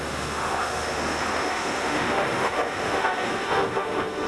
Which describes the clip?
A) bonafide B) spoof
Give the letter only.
B